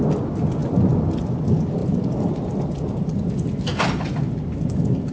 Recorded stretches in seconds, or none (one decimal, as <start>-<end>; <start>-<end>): 0.0-1.8